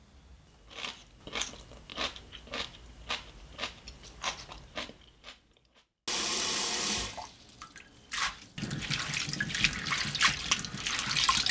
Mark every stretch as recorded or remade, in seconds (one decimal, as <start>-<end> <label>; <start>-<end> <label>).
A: 0.0-11.5 recorded